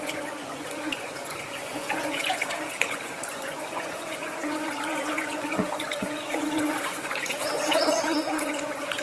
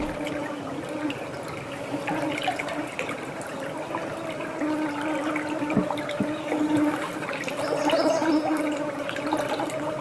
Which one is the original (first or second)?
second